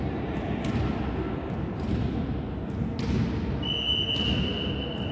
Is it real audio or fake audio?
real